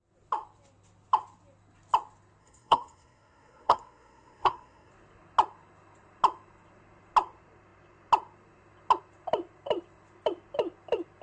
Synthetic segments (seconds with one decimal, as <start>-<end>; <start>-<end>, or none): 2.4-4.9